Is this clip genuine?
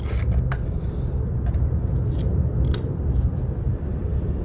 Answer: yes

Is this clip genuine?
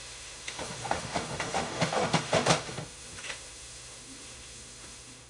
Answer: no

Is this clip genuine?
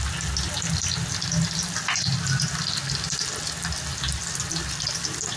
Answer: yes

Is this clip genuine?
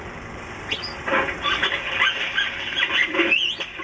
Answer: yes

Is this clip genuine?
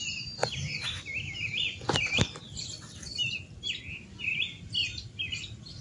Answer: yes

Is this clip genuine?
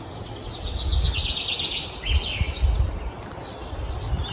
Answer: yes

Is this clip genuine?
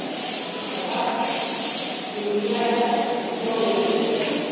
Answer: yes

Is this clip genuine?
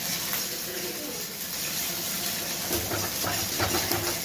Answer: yes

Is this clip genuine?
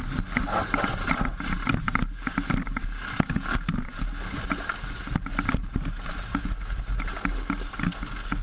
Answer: yes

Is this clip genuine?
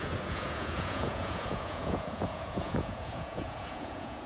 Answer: no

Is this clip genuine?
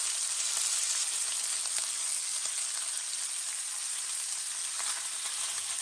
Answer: yes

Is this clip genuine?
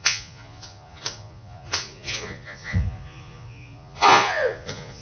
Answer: no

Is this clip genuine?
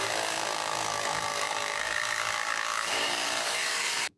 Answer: no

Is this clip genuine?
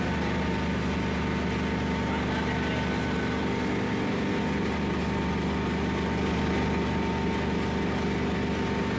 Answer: yes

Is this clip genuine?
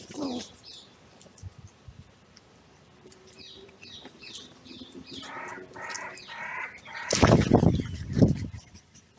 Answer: no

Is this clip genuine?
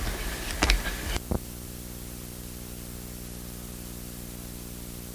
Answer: no